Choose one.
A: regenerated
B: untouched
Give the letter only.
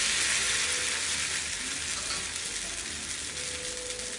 B